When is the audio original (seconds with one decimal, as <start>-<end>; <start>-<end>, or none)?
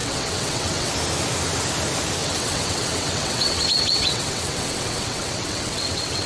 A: 0.9-2.2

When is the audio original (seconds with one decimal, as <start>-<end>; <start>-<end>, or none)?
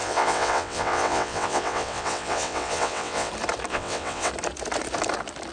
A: 3.3-3.7; 4.3-5.5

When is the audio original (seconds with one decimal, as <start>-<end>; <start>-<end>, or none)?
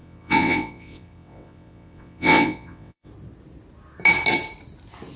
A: 3.1-5.2